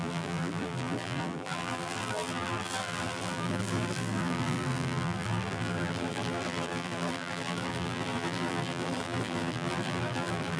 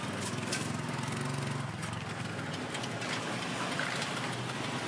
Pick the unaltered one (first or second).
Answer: second